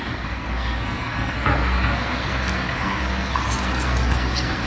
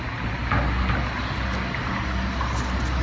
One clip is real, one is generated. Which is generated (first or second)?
first